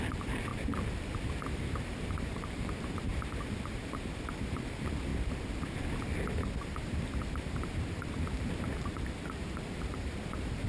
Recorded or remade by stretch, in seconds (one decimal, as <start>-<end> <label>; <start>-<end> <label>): 0.0-0.5 remade; 0.5-1.3 recorded; 1.3-5.1 remade; 5.1-6.6 recorded; 6.6-10.7 remade